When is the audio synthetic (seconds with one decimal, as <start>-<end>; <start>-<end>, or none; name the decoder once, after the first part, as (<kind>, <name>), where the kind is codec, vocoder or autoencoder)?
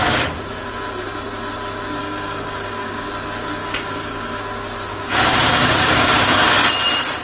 2.0-3.1 (codec, DAC); 3.6-4.4; 4.9-6.7